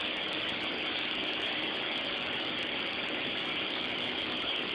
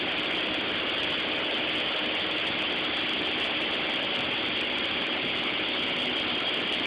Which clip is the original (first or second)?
second